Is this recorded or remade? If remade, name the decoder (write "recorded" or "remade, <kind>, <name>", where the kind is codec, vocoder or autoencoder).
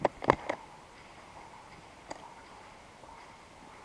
recorded